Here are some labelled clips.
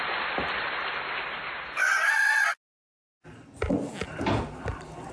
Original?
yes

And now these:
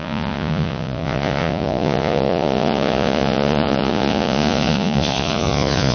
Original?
no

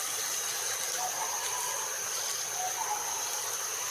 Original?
yes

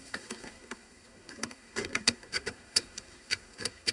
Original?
no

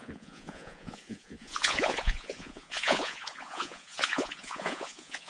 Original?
no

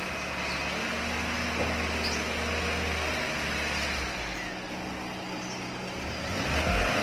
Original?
yes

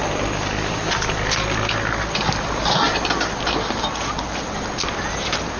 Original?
yes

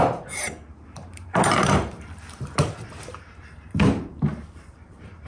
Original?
no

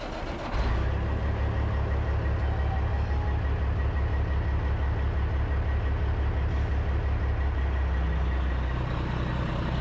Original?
yes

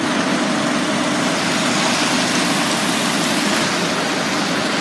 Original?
yes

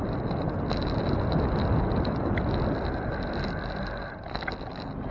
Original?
yes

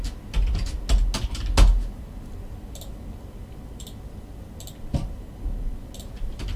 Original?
yes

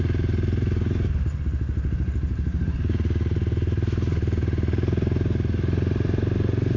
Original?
yes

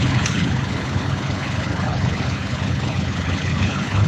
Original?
no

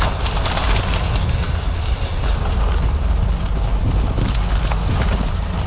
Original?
yes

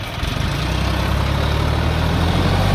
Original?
yes